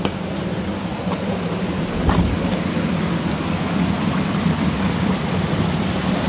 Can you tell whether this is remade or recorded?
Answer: recorded